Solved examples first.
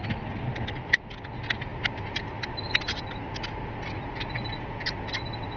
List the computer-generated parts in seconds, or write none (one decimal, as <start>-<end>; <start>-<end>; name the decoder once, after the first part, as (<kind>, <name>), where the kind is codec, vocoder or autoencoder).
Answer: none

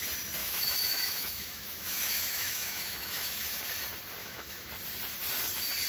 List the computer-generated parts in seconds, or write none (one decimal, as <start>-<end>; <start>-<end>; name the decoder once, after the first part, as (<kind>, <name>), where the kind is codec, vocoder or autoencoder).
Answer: 0.4-3.6 (autoencoder, DAC-VAE); 4.2-4.7

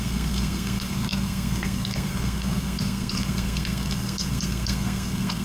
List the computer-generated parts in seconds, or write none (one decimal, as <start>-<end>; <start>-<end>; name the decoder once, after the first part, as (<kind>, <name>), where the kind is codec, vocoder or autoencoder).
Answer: 0.0-5.4 (codec, SNAC)

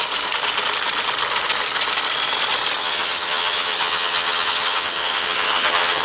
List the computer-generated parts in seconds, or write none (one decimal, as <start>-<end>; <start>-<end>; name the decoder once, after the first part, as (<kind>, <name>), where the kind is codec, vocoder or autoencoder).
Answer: 2.8-6.0 (vocoder, HiFi-GAN)

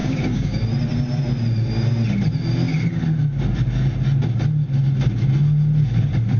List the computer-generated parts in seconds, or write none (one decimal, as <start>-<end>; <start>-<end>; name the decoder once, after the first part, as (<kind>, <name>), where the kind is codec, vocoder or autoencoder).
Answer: 0.0-0.6 (codec, DAC)

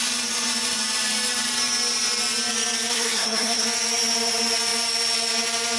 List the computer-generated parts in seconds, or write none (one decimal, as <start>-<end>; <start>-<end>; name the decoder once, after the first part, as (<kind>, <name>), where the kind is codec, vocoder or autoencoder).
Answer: 2.9-3.6 (codec, SNAC)

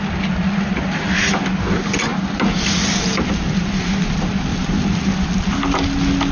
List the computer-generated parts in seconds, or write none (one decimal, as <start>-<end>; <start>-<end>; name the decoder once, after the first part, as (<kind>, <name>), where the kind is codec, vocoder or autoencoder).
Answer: 4.5-5.5 (vocoder, BigVGAN v2)